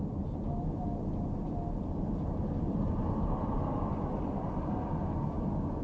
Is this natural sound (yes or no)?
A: yes